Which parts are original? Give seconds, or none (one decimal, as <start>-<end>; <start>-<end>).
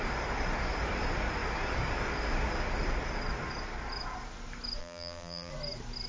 0.0-4.8; 5.5-6.1